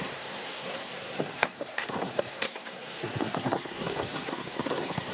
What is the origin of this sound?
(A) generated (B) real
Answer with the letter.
A